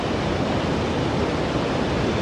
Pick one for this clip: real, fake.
real